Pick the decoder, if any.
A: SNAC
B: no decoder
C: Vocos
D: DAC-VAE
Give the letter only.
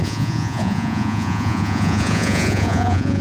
C